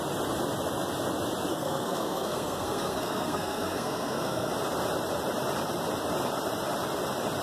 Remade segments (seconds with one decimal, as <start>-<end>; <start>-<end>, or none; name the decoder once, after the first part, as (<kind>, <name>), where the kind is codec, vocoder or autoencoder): 1.5-4.5 (codec, SNAC)